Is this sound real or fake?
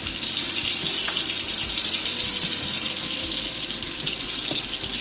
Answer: real